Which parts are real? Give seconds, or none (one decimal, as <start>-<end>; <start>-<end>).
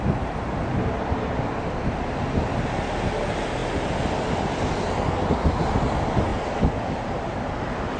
0.0-6.3; 7.4-8.0